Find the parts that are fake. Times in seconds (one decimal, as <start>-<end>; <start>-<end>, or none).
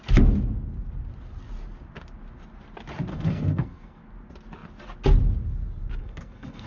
3.1-4.0; 6.0-6.7